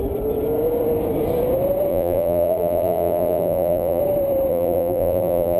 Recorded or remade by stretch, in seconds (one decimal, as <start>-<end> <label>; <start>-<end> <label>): 0.0-1.9 recorded; 1.9-4.0 remade; 4.0-4.5 recorded; 4.5-5.6 remade